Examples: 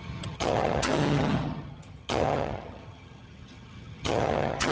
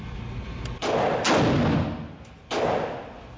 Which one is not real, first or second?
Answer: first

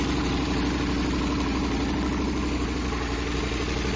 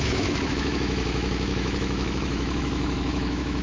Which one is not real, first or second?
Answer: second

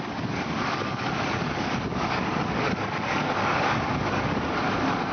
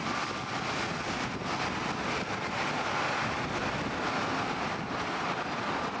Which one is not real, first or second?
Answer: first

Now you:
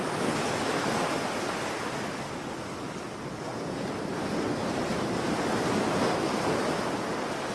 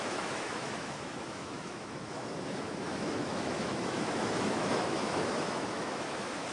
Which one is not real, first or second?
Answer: second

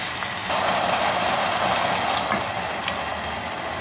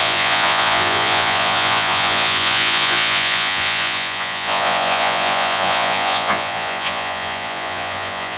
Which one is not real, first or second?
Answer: second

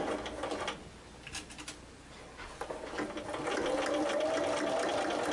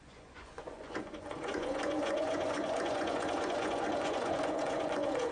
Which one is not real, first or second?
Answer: second